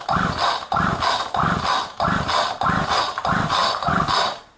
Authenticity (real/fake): real